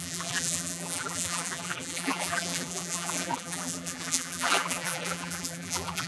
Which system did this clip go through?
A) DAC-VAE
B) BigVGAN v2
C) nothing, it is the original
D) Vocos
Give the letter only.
B